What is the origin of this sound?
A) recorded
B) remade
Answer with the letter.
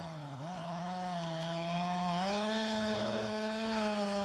B